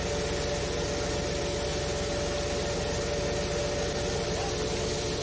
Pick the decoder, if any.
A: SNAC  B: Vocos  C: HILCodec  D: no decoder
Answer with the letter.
D